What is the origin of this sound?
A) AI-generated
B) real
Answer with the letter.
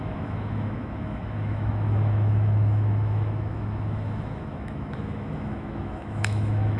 A